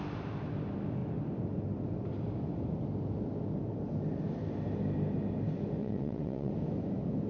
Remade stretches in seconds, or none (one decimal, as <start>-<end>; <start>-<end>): 5.8-6.5